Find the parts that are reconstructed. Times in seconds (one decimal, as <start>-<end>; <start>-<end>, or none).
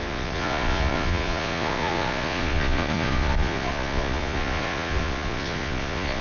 0.0-6.2